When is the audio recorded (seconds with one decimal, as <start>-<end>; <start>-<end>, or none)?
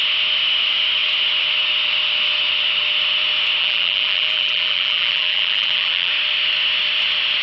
0.0-3.6; 6.1-7.4